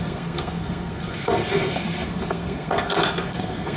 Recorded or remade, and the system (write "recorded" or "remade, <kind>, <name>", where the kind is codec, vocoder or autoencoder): remade, codec, SNAC